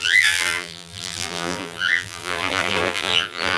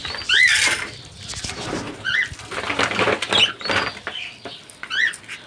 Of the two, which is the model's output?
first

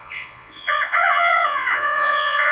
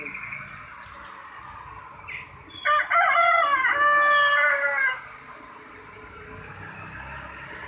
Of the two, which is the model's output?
first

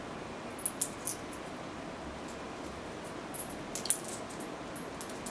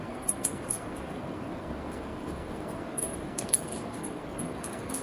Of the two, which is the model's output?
second